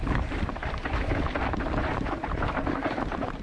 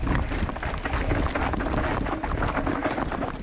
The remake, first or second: first